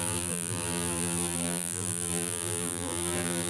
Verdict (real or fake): fake